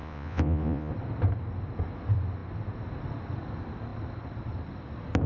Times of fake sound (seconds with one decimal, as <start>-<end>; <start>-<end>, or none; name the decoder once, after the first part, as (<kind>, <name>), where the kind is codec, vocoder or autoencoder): 0.0-0.9 (vocoder, Vocos)